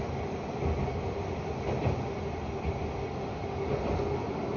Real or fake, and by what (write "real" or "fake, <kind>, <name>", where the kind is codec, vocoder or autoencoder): real